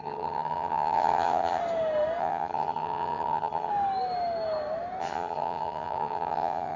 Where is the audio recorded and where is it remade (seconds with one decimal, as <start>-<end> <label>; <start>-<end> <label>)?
0.0-1.6 remade; 1.6-2.2 recorded; 2.2-3.7 remade; 3.7-5.0 recorded; 5.0-6.8 remade